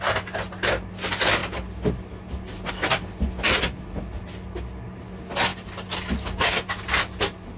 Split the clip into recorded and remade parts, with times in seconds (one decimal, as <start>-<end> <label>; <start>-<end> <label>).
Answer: 0.0-7.6 recorded